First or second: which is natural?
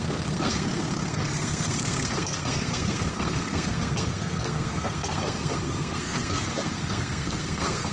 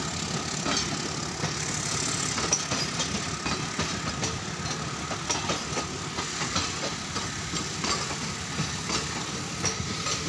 second